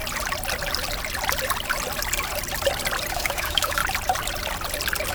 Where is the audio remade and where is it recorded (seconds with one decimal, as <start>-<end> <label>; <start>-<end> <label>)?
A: 0.0-3.1 recorded; 3.1-3.8 remade; 3.8-5.1 recorded